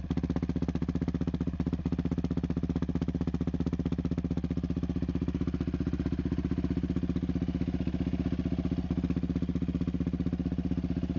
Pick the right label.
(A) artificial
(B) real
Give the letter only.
B